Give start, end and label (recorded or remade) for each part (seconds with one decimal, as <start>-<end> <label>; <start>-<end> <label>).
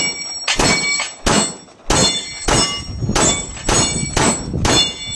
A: 0.0-5.1 recorded